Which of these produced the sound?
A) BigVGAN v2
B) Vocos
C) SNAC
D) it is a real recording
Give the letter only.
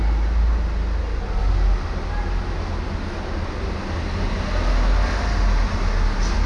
D